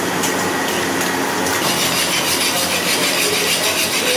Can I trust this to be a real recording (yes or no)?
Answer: yes